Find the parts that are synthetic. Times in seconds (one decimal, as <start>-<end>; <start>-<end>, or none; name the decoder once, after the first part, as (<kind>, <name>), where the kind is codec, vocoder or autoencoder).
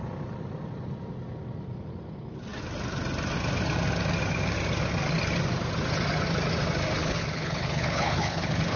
7.0-8.8 (codec, HILCodec)